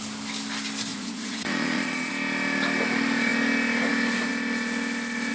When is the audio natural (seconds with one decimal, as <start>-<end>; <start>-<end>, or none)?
0.0-0.9; 2.1-5.3